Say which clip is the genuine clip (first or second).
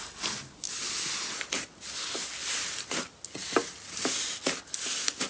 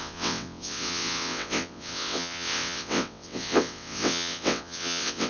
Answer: first